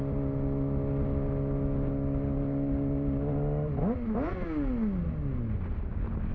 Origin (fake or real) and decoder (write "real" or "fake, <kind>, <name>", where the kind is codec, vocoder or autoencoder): real